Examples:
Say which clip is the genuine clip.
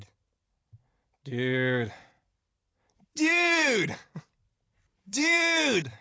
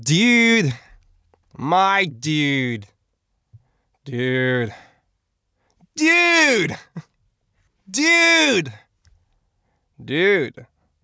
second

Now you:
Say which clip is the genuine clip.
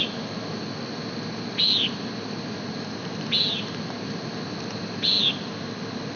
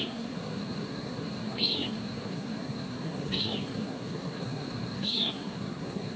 first